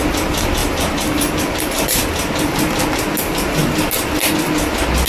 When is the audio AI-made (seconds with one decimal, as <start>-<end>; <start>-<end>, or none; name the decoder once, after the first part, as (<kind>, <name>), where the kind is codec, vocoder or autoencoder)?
0.0-2.0 (vocoder, BigVGAN v2); 3.2-3.6